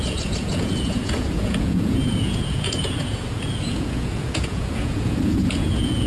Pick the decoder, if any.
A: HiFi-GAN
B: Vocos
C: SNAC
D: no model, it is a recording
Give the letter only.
B